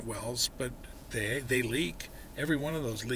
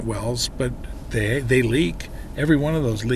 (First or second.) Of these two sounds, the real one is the second